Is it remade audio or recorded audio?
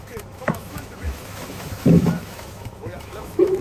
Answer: remade